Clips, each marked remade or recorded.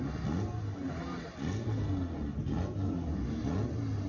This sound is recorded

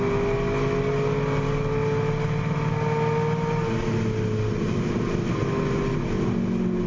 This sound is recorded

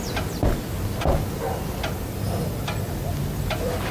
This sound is recorded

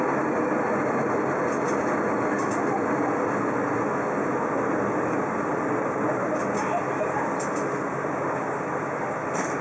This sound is recorded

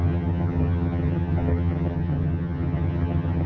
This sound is remade